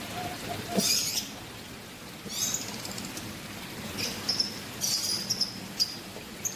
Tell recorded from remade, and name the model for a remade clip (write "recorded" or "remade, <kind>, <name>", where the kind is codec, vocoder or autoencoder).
recorded